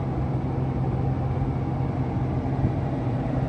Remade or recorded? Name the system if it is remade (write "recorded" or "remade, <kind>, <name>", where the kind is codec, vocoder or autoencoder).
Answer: recorded